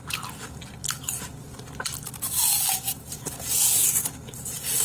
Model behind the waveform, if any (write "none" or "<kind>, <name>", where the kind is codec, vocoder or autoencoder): vocoder, BigVGAN v2